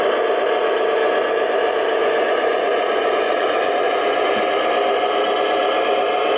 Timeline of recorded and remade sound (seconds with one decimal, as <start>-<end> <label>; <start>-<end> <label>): 0.0-2.0 recorded; 2.0-4.3 remade; 4.3-6.4 recorded